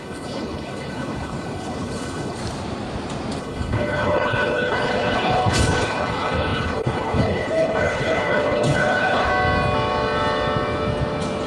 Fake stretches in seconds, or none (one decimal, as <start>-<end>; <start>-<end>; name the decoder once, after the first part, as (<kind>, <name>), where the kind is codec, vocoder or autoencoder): 0.0-2.4 (codec, HILCodec); 3.4-9.3